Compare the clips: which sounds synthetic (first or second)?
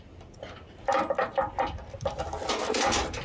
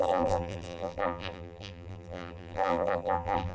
second